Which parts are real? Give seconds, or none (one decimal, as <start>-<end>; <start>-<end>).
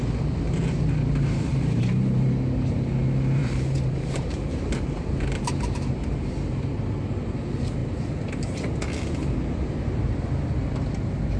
0.0-1.5; 2.3-3.4; 6.3-7.8; 8.8-11.4